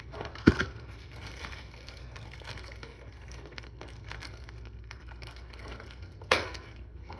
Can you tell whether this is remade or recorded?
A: remade